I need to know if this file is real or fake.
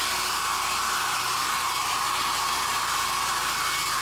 real